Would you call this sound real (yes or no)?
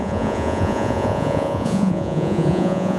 no